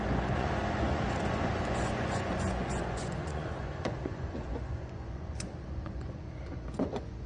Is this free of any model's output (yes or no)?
no